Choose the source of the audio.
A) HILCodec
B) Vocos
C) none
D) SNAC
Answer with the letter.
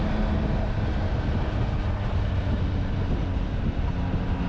C